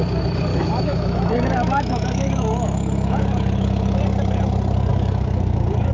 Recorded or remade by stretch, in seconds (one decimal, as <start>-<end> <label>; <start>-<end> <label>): 0.0-0.5 recorded; 0.5-4.0 remade; 4.0-4.9 recorded; 4.9-5.9 remade

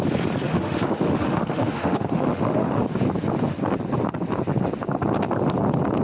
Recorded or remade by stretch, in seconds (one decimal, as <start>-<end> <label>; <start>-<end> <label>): 0.0-0.5 recorded; 0.5-2.8 remade; 2.8-6.0 recorded